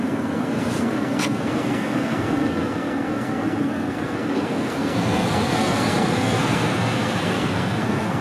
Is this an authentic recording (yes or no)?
no